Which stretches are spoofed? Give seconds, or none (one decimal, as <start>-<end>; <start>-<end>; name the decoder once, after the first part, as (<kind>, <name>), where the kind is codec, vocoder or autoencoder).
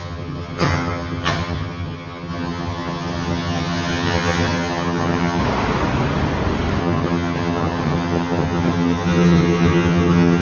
0.0-5.4 (vocoder, HiFi-GAN); 6.8-10.4